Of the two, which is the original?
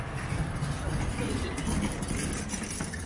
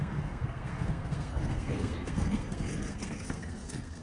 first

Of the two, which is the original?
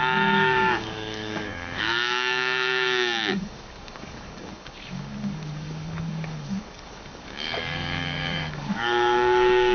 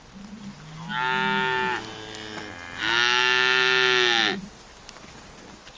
second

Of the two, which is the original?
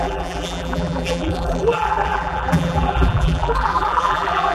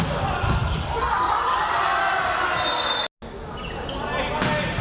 second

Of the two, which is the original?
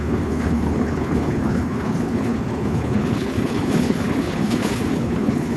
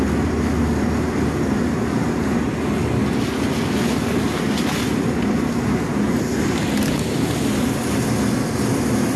second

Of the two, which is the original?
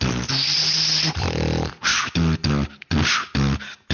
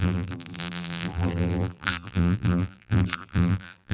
first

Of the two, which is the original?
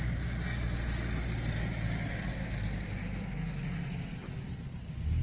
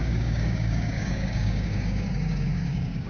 first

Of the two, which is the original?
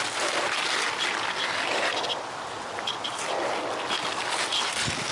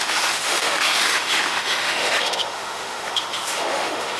first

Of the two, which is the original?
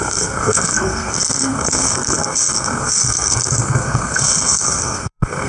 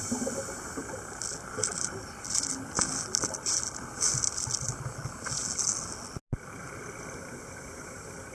second